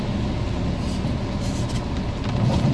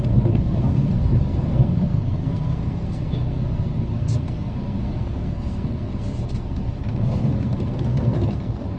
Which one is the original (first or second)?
first